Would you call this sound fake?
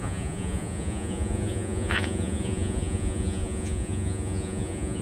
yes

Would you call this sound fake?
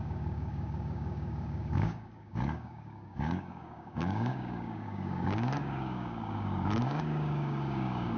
yes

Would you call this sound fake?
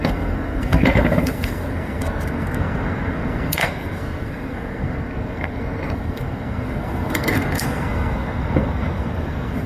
yes